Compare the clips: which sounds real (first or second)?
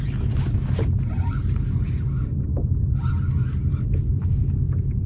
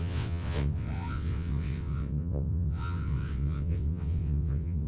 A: first